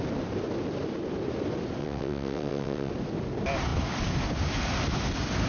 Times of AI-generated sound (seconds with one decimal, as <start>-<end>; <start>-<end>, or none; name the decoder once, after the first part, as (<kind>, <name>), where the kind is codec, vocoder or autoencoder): 1.8-2.9 (vocoder, WaveNeXt)